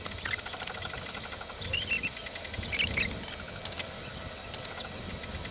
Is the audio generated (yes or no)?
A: no